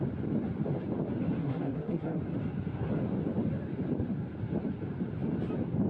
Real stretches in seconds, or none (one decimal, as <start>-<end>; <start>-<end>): 0.0-1.4; 2.2-5.9